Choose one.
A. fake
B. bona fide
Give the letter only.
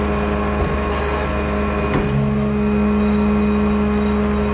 B